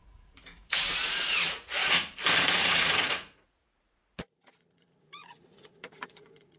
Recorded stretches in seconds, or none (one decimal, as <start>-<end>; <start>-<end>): 1.8-2.5